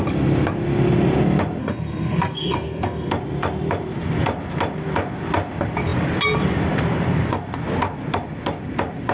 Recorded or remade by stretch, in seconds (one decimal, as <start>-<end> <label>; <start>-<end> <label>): 0.0-1.6 recorded; 1.6-3.1 remade; 3.1-9.1 recorded